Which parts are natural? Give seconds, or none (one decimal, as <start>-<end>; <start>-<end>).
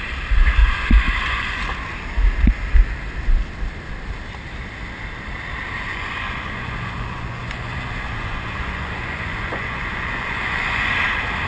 0.0-0.6; 1.6-5.9; 10.9-11.5